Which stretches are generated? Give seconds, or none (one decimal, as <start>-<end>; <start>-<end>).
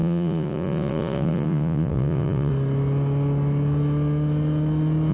0.0-2.5